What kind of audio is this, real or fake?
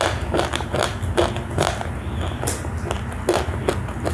real